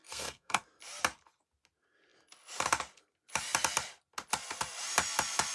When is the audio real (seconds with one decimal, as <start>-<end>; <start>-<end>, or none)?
0.6-5.5